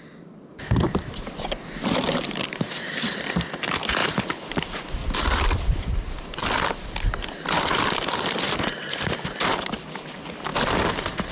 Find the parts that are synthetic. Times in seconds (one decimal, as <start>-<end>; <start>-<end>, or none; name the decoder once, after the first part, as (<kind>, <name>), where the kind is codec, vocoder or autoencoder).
0.0-11.3 (vocoder, BigVGAN v2)